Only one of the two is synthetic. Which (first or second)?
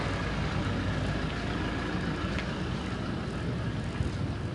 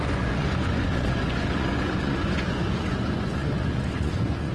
second